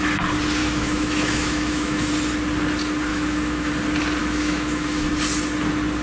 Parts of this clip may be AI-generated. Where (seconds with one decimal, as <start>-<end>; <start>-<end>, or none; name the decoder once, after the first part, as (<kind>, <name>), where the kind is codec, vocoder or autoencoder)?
0.6-2.1 (autoencoder, DAC-VAE); 3.1-3.7; 4.2-5.1